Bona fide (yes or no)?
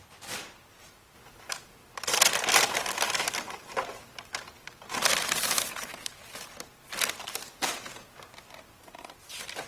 yes